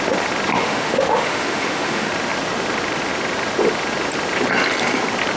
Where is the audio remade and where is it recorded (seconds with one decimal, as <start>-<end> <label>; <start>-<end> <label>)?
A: 0.0-0.6 recorded; 0.6-2.1 remade; 2.1-5.4 recorded